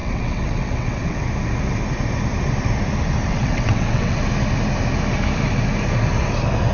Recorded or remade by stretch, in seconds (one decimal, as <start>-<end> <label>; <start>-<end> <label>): 0.0-1.3 remade; 1.3-3.3 recorded; 3.3-4.2 remade; 4.2-6.7 recorded

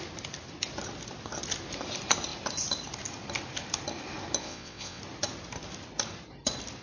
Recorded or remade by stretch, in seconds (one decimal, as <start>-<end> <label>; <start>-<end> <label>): 0.0-4.4 recorded; 4.4-5.0 remade; 5.0-6.8 recorded

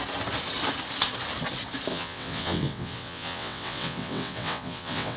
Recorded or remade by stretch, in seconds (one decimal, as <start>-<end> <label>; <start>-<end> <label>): 0.0-1.9 recorded; 1.9-5.2 remade

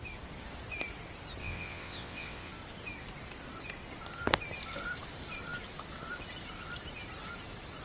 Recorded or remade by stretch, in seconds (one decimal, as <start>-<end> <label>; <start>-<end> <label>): 0.0-1.4 recorded; 1.4-2.5 remade; 2.5-7.8 recorded

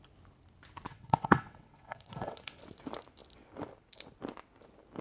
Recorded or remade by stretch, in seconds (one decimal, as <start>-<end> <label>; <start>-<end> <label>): 0.0-0.9 recorded; 0.9-2.6 remade; 2.6-5.0 recorded

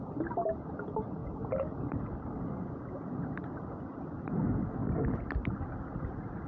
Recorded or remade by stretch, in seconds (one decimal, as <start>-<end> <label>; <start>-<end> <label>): 0.0-6.5 recorded

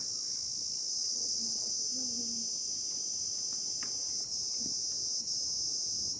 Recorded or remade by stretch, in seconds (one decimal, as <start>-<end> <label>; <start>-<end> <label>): 0.0-1.0 recorded; 1.0-1.7 remade; 1.7-6.2 recorded

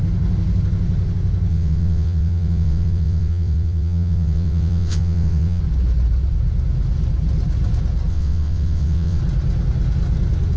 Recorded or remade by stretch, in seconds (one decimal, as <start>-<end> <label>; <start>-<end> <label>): 0.0-1.5 recorded; 1.5-5.6 remade; 5.6-8.1 recorded; 8.1-9.2 remade; 9.2-10.6 recorded